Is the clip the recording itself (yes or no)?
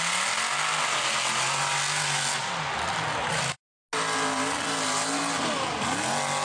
yes